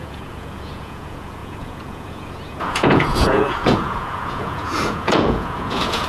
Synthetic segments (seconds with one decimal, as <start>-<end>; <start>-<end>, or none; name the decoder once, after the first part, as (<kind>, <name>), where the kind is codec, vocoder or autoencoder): 0.0-6.1 (vocoder, Vocos)